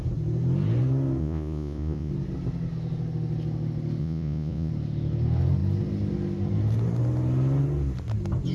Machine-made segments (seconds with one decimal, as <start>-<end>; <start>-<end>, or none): 1.2-2.1; 4.0-4.7